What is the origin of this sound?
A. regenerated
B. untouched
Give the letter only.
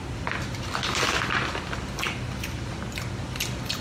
B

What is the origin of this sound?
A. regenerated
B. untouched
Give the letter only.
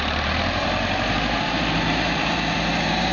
A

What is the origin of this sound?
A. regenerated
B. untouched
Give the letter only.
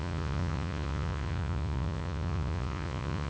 A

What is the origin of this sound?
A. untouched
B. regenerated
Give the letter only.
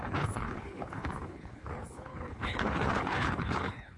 B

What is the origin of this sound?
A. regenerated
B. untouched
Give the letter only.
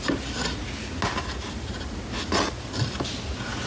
B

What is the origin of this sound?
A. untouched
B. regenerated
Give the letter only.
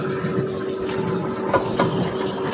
A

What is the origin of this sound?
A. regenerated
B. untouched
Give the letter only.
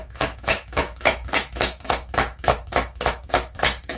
A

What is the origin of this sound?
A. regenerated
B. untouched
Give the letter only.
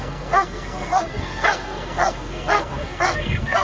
A